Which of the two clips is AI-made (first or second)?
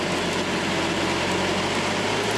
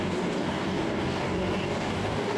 second